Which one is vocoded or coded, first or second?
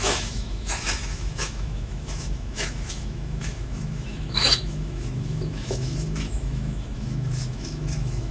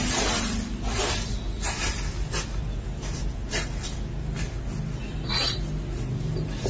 first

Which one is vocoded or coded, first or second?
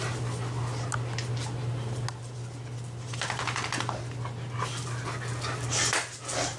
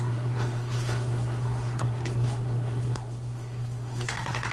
second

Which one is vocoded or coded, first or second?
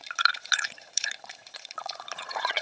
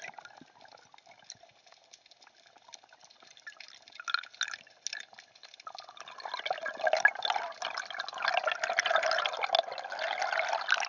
first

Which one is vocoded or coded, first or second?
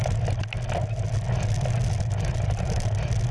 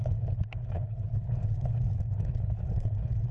second